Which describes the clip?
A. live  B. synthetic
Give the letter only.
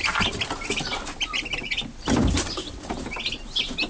A